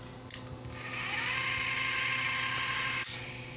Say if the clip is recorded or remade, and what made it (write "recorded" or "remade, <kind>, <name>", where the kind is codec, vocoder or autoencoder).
recorded